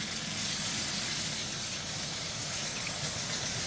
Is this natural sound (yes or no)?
no